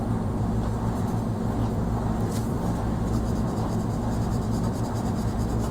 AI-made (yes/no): yes